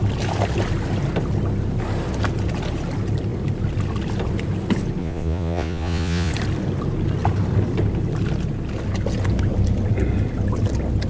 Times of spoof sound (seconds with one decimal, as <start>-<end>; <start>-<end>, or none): 5.0-6.3